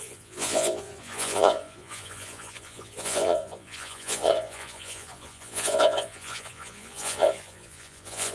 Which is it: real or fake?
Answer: fake